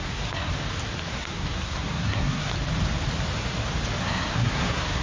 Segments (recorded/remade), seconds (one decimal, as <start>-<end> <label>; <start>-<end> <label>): 0.0-0.5 remade; 0.5-1.1 recorded; 1.1-2.5 remade; 2.5-4.0 recorded; 4.0-5.0 remade